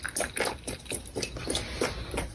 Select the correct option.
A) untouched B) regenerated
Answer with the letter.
B